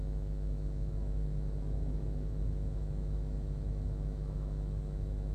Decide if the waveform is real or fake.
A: fake